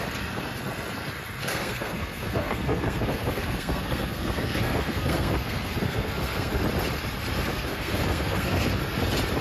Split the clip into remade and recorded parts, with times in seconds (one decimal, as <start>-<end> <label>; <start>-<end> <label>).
0.0-1.4 recorded; 1.4-6.6 remade; 6.6-7.5 recorded; 7.5-8.8 remade; 8.8-9.4 recorded